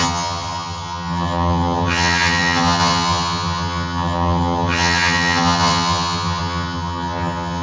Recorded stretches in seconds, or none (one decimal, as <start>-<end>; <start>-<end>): none